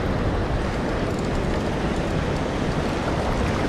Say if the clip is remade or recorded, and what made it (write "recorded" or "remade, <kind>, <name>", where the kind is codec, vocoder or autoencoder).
recorded